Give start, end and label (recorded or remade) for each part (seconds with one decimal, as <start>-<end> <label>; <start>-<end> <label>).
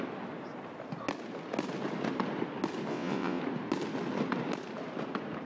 0.0-2.9 recorded; 2.9-3.4 remade; 3.4-5.4 recorded